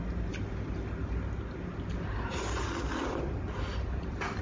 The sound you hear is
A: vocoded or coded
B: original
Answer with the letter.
B